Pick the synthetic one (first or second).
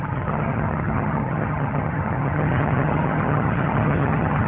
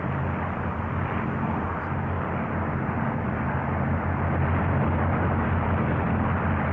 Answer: first